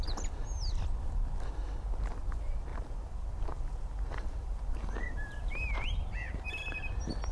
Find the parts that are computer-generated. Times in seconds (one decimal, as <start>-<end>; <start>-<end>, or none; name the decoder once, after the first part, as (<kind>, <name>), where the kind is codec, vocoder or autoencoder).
2.7-6.6 (vocoder, BigVGAN v2)